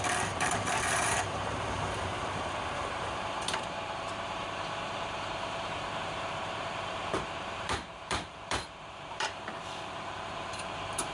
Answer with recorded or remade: remade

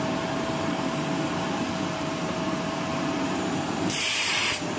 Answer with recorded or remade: remade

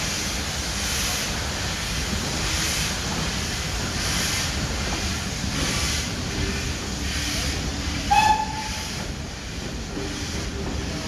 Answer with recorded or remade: recorded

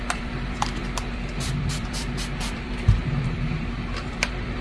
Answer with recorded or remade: remade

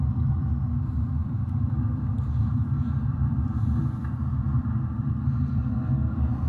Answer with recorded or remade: remade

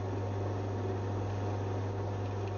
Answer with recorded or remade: recorded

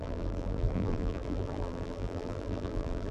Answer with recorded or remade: remade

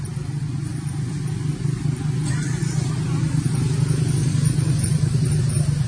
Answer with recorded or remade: recorded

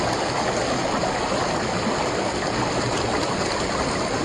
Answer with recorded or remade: recorded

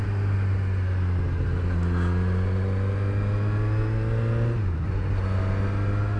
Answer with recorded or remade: recorded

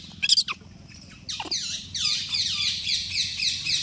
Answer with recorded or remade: recorded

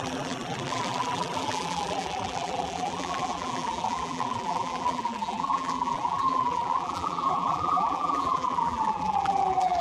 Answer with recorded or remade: remade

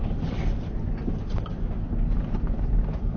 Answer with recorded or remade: remade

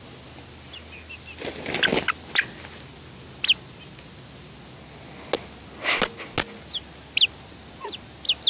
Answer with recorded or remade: recorded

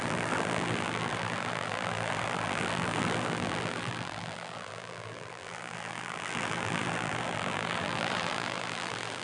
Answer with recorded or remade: remade